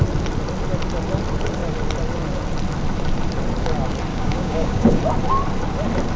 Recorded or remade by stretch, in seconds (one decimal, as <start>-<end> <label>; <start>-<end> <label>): 0.0-4.1 recorded; 4.1-5.0 remade; 5.0-6.2 recorded